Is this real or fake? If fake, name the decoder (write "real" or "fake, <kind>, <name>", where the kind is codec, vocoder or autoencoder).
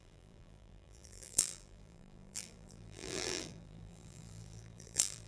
fake, vocoder, BigVGAN v2